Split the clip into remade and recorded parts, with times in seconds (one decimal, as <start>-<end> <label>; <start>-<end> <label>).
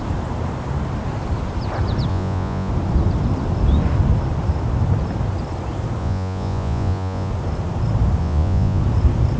0.0-2.1 recorded; 2.1-2.7 remade; 2.7-6.0 recorded; 6.0-7.3 remade; 7.3-8.2 recorded; 8.2-8.8 remade; 8.8-9.4 recorded